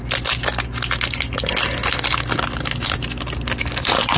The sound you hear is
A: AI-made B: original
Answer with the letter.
B